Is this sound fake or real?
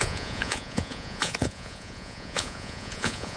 fake